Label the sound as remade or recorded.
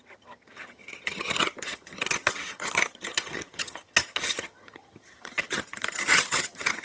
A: remade